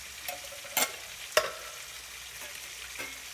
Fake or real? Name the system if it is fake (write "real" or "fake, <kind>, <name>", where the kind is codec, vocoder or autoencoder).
real